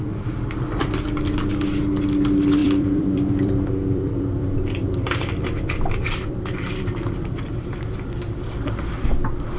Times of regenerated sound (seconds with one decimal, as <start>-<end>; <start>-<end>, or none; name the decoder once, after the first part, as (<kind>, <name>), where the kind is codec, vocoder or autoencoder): 2.6-7.5 (vocoder, BigVGAN v2)